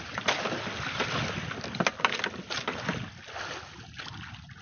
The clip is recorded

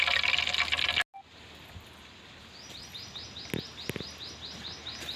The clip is recorded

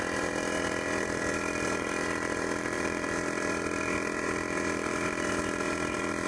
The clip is remade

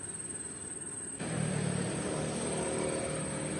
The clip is recorded